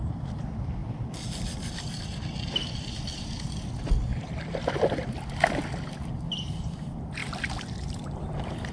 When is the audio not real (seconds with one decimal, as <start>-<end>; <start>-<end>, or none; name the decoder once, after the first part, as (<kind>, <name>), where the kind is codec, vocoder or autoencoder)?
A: 4.1-5.1 (vocoder, BigVGAN v2); 7.2-8.7